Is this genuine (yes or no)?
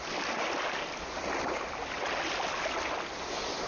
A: yes